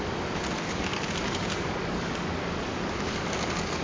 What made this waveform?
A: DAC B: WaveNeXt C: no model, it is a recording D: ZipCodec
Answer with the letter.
A